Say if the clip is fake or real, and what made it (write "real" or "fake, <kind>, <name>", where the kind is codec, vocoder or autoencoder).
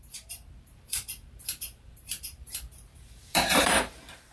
fake, vocoder, BigVGAN v2